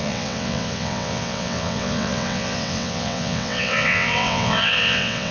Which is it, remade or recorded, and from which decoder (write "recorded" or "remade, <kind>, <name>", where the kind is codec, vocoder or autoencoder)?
remade, vocoder, WaveNeXt